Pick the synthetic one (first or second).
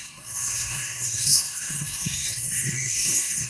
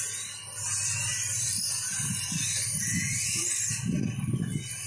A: first